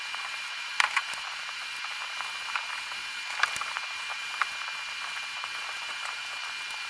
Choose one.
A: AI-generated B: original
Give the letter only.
B